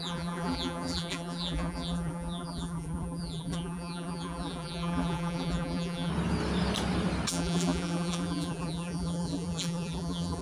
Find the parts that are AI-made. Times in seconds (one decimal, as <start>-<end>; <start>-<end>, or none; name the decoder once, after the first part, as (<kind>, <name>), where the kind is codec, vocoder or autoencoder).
0.0-6.1 (vocoder, BigVGAN v2); 7.3-10.4